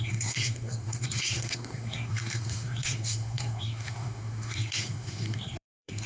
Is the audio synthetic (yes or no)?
yes